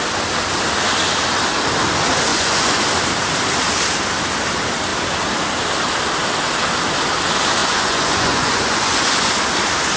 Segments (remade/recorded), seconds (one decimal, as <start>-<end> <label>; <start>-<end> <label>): 0.0-2.3 recorded; 2.3-2.8 remade; 2.8-7.6 recorded; 7.6-9.3 remade; 9.3-10.0 recorded